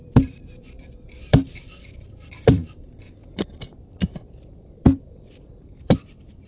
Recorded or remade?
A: remade